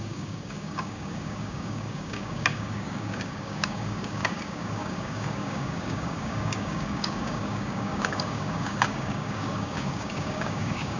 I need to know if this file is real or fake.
fake